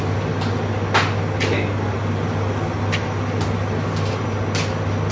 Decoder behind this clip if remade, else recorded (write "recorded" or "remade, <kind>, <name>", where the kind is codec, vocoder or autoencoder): recorded